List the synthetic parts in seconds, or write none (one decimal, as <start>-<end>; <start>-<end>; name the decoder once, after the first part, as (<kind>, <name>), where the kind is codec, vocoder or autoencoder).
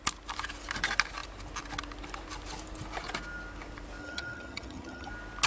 4.0-5.1 (vocoder, HiFi-GAN)